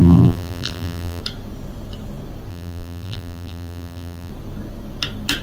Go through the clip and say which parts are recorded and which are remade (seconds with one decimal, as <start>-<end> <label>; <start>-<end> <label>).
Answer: 0.0-1.2 remade; 1.2-2.5 recorded; 2.5-4.3 remade; 4.3-5.4 recorded